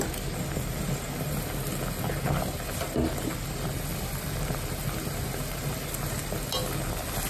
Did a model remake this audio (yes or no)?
no